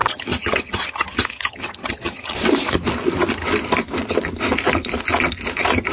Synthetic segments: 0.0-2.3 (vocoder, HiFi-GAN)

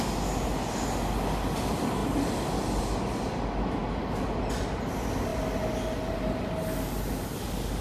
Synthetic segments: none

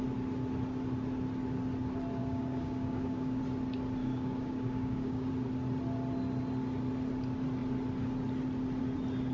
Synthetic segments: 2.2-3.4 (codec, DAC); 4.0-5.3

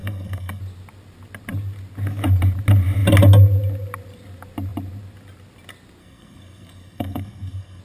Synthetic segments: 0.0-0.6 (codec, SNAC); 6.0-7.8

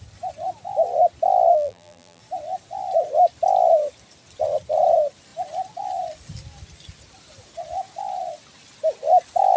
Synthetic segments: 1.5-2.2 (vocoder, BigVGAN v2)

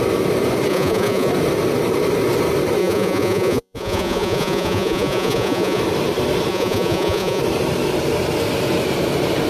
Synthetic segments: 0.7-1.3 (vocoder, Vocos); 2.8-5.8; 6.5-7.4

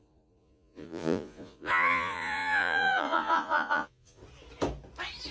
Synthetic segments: 0.0-4.2 (vocoder, Vocos)